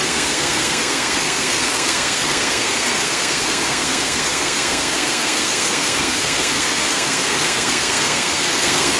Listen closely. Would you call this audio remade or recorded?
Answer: remade